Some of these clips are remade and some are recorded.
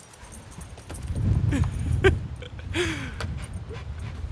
recorded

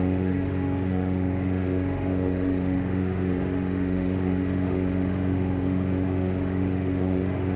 remade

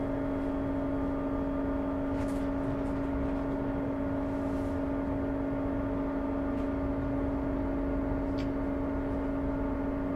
recorded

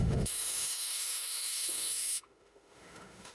remade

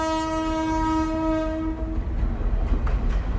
recorded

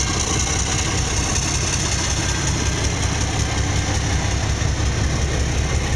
recorded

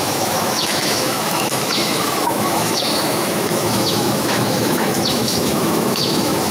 remade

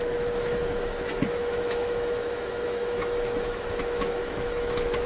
remade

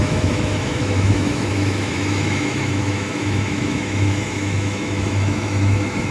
remade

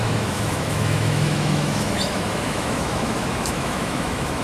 remade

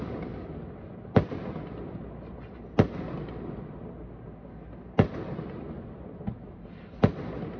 recorded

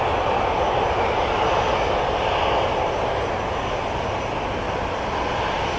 recorded